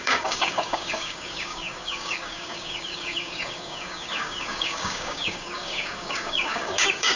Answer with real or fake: fake